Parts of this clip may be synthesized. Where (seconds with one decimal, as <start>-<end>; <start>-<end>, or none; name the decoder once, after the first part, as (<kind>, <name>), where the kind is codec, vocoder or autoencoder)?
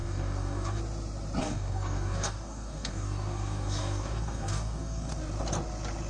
0.0-0.8 (codec, DAC); 1.4-5.1